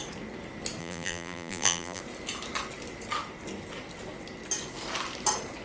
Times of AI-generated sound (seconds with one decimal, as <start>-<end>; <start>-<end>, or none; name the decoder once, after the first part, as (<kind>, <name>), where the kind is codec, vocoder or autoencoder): 0.8-2.0 (vocoder, BigVGAN v2)